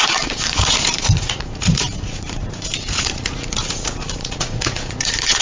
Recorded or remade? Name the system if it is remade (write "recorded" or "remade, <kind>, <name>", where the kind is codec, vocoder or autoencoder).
remade, vocoder, Vocos